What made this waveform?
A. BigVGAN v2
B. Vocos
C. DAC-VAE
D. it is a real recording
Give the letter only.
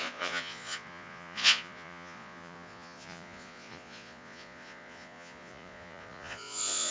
B